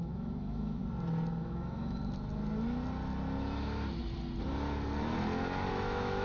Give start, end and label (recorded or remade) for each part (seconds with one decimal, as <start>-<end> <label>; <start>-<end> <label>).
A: 0.0-0.8 remade; 0.8-1.4 recorded; 1.4-2.0 remade; 2.0-5.7 recorded; 5.7-6.2 remade